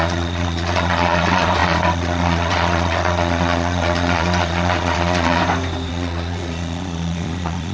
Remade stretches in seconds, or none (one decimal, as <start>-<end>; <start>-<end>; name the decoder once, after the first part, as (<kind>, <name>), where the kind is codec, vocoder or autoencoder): 0.0-5.4 (vocoder, Vocos); 5.9-7.7